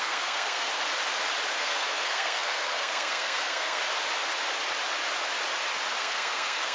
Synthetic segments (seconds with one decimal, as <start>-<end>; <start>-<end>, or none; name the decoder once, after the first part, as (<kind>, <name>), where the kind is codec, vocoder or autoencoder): 0.0-0.7 (codec, SNAC); 1.5-3.8; 6.0-6.7